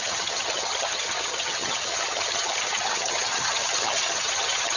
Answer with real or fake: fake